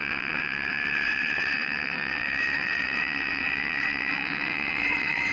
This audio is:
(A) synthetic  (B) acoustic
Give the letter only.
A